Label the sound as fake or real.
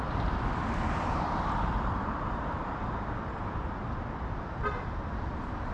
fake